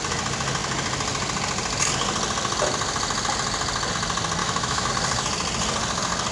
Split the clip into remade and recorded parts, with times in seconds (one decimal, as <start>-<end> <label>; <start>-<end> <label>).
0.0-4.4 recorded; 4.4-4.9 remade; 4.9-6.3 recorded